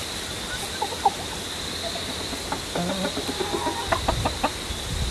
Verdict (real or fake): real